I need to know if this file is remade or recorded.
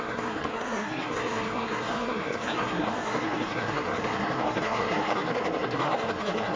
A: remade